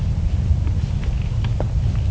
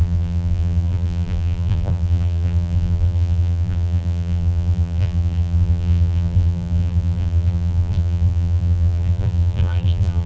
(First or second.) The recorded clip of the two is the first